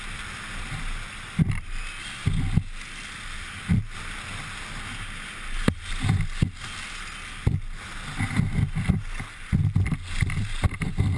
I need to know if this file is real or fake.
real